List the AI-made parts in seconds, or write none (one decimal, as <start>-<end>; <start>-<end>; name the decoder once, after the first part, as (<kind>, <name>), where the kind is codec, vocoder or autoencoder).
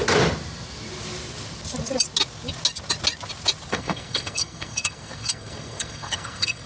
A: 3.7-6.7 (codec, SNAC)